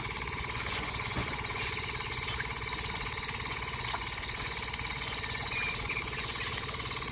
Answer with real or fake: fake